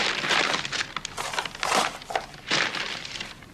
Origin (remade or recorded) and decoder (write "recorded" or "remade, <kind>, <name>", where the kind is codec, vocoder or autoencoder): recorded